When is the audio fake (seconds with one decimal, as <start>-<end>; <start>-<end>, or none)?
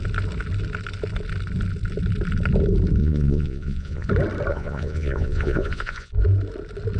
3.0-4.1; 4.5-6.1